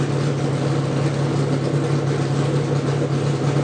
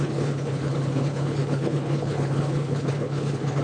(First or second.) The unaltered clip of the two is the first